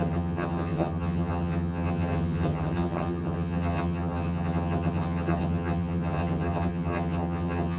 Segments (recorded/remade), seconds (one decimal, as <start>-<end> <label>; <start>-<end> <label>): 0.0-7.8 remade